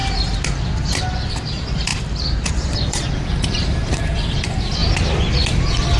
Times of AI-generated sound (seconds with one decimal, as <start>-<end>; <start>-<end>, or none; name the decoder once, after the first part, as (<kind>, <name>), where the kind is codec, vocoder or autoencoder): 1.3-1.9 (vocoder, BigVGAN v2); 2.5-4.8